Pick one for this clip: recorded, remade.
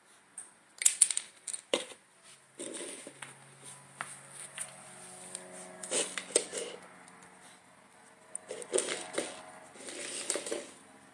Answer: recorded